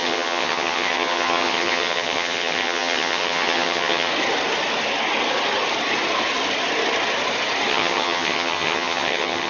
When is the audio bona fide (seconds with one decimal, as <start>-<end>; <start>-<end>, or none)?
4.1-7.7

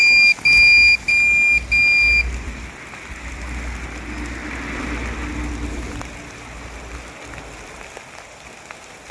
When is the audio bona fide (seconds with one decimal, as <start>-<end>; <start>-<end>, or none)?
0.0-9.1